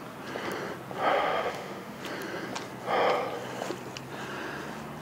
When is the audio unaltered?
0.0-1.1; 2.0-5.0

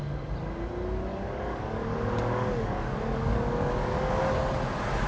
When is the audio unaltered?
0.0-1.1; 4.2-5.1